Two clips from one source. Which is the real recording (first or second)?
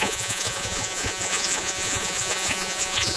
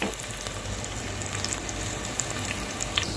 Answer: second